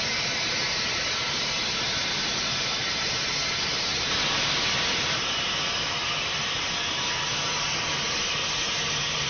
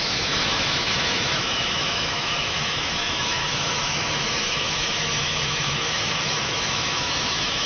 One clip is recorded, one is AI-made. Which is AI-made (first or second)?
second